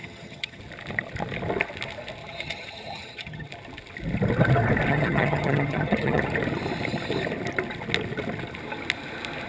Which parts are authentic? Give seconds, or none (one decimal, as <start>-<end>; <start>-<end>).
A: 0.6-2.2; 3.5-4.9; 6.2-9.5